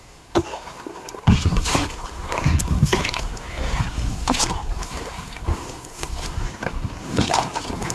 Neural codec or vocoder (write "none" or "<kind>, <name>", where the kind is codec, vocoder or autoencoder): codec, SNAC